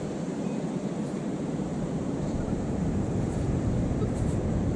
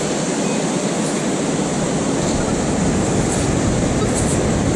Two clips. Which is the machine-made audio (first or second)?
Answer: first